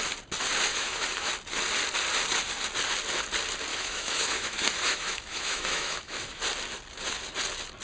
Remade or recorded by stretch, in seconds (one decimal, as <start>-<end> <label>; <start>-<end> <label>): 0.0-0.7 recorded; 0.7-1.3 remade; 1.3-3.7 recorded; 3.7-6.4 remade; 6.4-7.8 recorded